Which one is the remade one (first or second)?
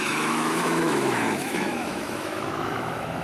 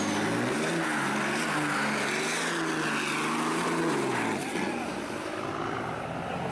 first